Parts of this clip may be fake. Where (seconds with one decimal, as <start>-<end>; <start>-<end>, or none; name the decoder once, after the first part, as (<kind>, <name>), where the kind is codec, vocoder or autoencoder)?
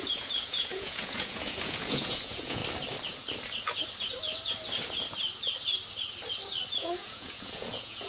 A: 0.0-2.6 (vocoder, Vocos); 6.7-8.1